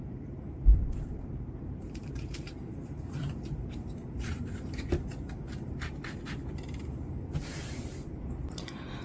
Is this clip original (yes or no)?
no